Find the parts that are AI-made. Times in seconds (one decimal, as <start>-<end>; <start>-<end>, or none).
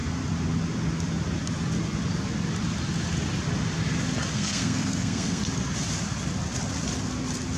4.3-5.4